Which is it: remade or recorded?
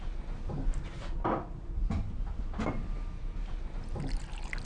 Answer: recorded